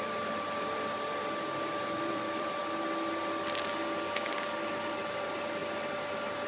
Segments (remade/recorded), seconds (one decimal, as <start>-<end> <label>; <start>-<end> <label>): 0.0-2.6 remade; 2.6-4.7 recorded; 4.7-5.6 remade; 5.6-6.5 recorded